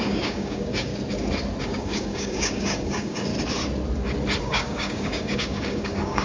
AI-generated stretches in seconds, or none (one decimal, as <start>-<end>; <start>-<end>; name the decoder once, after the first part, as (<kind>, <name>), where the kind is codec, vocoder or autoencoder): 0.0-0.9 (codec, DAC); 1.6-3.3; 4.4-6.2